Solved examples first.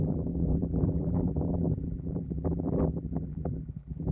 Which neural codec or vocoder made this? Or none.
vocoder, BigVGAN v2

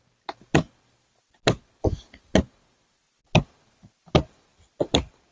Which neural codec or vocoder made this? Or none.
none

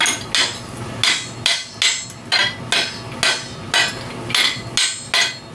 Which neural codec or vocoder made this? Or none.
none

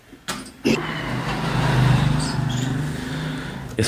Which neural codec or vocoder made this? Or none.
none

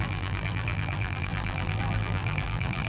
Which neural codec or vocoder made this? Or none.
vocoder, BigVGAN v2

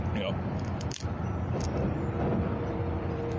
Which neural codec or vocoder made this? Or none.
vocoder, BigVGAN v2